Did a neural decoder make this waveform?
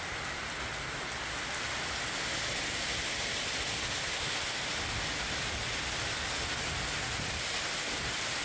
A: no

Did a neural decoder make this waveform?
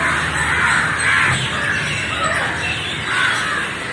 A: no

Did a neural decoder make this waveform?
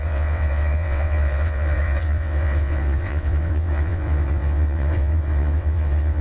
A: yes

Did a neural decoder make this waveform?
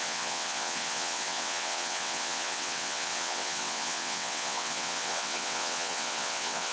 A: yes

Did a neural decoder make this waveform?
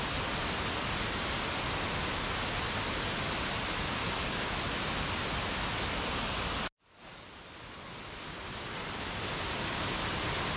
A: no